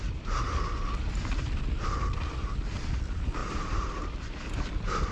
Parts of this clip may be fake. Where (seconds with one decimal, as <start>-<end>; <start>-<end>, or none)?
3.4-4.4